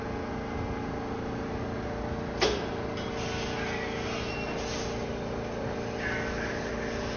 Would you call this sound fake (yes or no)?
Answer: no